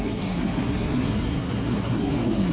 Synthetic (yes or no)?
yes